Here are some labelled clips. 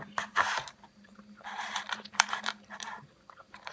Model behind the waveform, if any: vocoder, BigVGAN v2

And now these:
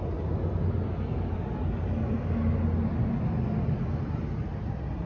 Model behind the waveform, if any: none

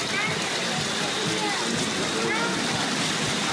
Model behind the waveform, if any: none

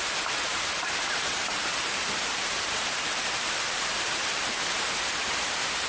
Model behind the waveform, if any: vocoder, BigVGAN v2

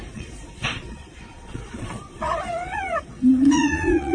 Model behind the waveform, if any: vocoder, Vocos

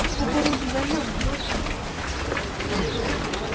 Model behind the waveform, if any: none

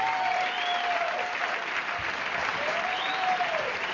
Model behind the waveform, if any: none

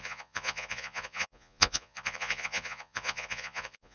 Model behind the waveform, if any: vocoder, Vocos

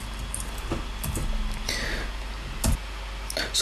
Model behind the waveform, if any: none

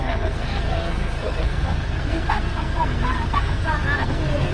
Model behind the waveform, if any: codec, SNAC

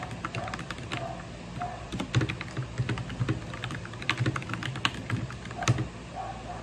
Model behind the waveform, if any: none